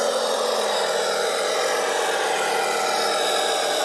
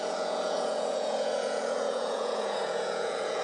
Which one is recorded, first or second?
first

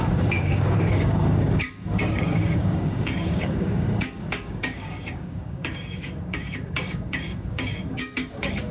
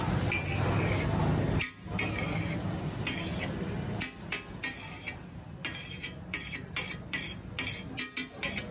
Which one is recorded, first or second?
second